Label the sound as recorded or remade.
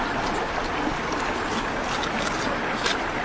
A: recorded